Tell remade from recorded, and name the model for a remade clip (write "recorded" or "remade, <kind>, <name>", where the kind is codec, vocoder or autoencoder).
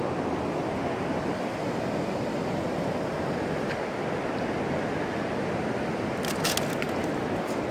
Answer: recorded